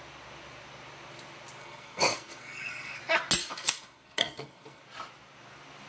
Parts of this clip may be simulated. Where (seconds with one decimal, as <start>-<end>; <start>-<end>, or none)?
1.6-3.0; 3.4-4.8